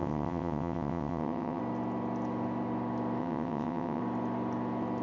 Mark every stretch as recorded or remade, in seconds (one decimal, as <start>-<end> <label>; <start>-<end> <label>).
0.0-1.6 remade; 1.6-3.2 recorded; 3.2-4.0 remade; 4.0-5.0 recorded